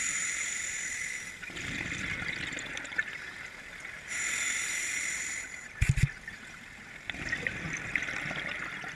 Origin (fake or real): real